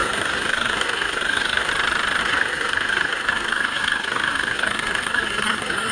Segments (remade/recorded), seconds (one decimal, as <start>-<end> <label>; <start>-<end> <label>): 0.0-1.7 remade; 1.7-2.2 recorded; 2.2-5.9 remade